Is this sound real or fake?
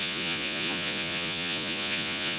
fake